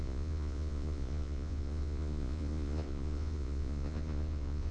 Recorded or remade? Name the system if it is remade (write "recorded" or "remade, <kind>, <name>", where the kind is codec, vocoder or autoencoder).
remade, vocoder, Vocos